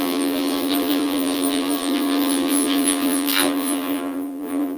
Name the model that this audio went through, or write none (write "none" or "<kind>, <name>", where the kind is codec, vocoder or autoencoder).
vocoder, BigVGAN v2